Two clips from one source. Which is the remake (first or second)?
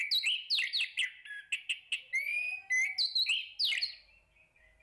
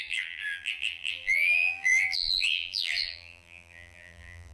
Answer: second